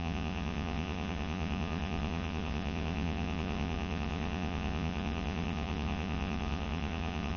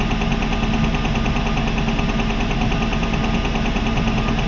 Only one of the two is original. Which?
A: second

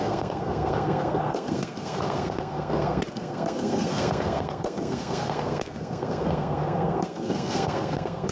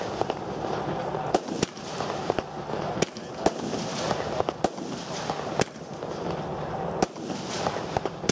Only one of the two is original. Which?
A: second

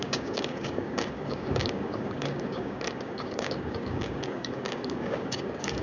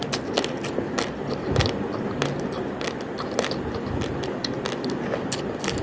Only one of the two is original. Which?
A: second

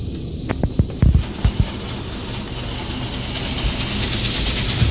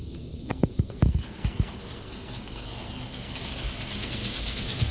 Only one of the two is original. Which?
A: first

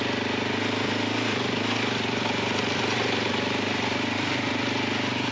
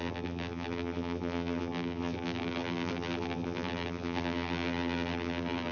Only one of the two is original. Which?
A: first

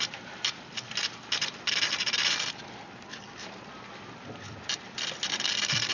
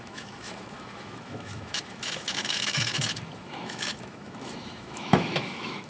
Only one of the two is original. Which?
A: first